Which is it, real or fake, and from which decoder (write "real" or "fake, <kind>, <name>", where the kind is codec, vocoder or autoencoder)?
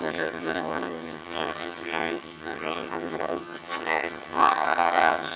fake, vocoder, HiFi-GAN